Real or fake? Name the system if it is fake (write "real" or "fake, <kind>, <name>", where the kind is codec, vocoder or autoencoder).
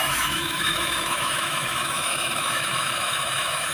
fake, autoencoder, DAC-VAE